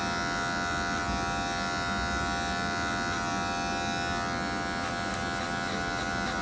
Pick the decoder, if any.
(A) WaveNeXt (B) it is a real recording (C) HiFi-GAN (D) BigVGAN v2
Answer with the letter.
B